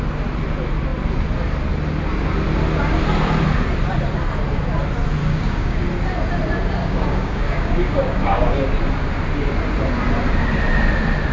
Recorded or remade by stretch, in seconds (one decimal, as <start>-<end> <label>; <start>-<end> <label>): 0.0-5.2 recorded; 5.2-5.8 remade; 5.8-6.8 recorded; 6.8-8.5 remade; 8.5-11.3 recorded